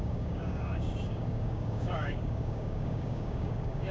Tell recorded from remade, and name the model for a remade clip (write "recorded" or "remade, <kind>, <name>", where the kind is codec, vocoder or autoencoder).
remade, codec, DAC